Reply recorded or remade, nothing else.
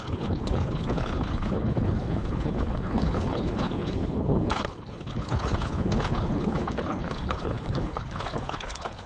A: remade